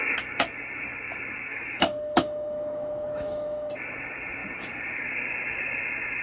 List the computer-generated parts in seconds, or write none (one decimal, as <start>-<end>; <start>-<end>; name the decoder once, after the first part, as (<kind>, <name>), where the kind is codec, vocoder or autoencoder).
1.5-3.7 (autoencoder, DAC-VAE)